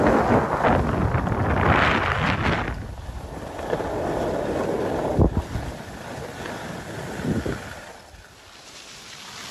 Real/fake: real